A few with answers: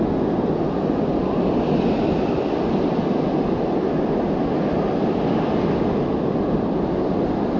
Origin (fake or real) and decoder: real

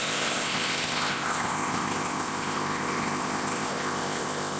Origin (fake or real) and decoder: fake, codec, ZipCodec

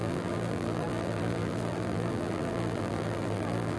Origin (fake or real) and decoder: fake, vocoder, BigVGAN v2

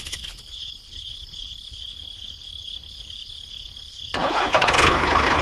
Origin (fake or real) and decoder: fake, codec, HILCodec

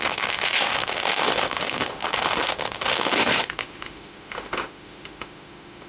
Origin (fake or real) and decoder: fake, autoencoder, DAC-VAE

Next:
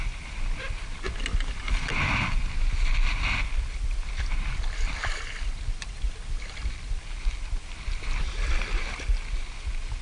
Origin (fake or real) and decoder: fake, vocoder, BigVGAN v2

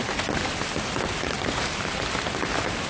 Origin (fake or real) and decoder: real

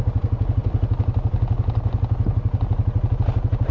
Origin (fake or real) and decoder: real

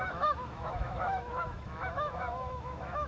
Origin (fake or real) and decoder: fake, autoencoder, DAC-VAE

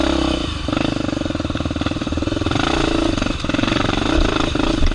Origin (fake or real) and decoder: real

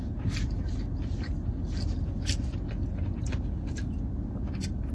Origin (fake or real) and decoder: real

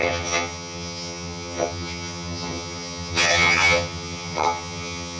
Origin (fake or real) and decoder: fake, vocoder, HiFi-GAN